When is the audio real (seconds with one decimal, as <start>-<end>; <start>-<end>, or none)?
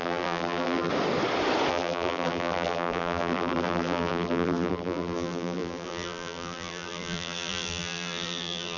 0.9-1.7